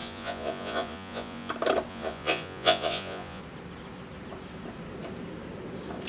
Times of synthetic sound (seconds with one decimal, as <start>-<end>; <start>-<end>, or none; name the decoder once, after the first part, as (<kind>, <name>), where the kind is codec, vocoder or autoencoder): 0.0-1.5 (vocoder, Vocos); 1.9-3.4